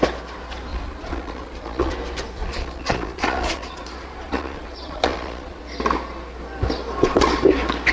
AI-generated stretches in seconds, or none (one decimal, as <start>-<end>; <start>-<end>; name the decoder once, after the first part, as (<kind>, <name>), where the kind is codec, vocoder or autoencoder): 0.7-1.9 (vocoder, Vocos); 2.4-5.6